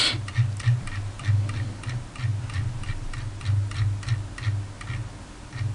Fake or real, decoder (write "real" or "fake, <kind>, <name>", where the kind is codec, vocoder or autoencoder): real